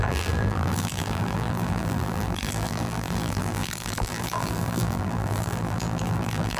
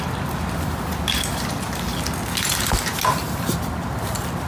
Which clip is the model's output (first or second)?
first